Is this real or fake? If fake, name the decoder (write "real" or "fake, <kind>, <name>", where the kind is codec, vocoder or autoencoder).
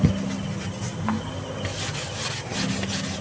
real